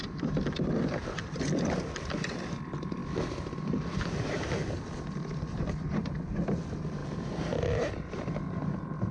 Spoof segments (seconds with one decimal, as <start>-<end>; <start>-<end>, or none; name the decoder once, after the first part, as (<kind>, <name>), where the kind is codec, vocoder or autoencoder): 3.0-5.7 (vocoder, BigVGAN v2); 7.0-8.2